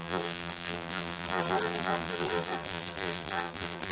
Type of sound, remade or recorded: remade